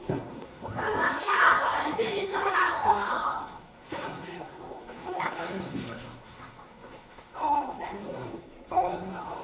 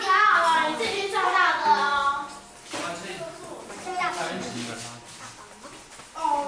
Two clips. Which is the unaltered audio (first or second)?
second